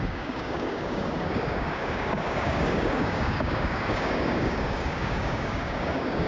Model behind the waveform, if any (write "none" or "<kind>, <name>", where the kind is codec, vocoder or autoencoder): codec, DAC